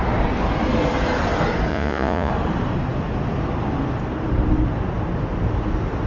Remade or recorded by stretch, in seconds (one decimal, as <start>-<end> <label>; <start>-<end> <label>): 0.0-1.7 recorded; 1.7-2.3 remade; 2.3-6.1 recorded